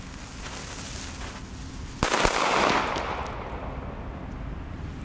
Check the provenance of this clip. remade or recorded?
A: recorded